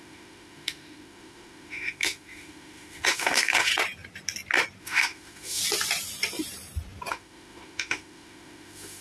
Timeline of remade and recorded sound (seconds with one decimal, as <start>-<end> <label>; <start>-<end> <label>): 0.0-3.7 remade; 3.7-4.8 recorded; 4.8-5.6 remade; 5.6-7.1 recorded; 7.1-9.0 remade